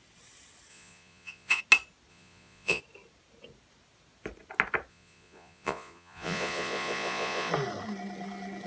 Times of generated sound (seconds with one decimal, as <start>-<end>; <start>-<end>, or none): 0.7-1.6; 2.1-2.8; 4.9-7.5